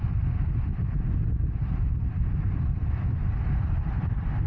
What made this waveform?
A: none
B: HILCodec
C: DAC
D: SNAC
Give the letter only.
A